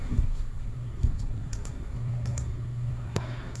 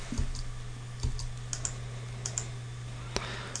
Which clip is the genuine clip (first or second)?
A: second